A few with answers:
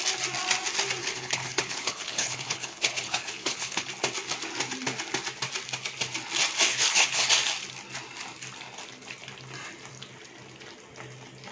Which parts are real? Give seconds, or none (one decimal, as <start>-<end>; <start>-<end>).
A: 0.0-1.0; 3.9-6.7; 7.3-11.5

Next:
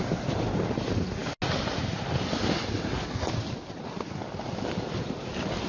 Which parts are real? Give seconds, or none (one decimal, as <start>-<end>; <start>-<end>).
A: 0.0-5.7

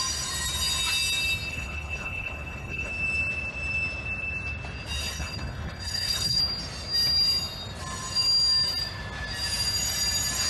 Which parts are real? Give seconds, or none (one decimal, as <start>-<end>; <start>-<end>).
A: 0.0-1.5; 2.9-5.0; 6.4-10.5